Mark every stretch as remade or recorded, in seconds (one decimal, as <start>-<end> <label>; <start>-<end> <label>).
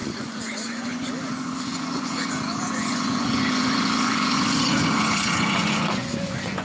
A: 0.0-6.6 remade